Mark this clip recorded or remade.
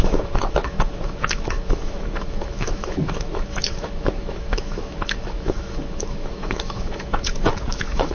remade